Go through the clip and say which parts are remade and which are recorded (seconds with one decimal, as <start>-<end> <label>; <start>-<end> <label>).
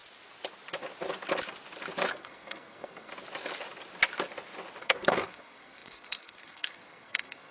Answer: 0.0-2.1 recorded; 2.1-3.1 remade; 3.1-4.8 recorded; 4.8-7.5 remade